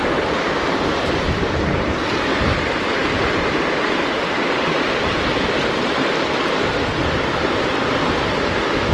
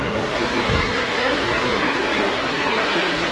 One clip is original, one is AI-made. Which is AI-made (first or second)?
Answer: second